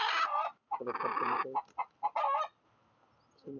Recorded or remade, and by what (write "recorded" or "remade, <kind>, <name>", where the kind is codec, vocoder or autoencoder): recorded